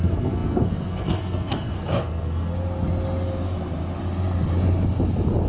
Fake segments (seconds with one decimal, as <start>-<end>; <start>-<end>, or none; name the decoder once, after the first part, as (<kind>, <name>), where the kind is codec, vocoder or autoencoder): 0.0-2.5 (codec, SNAC)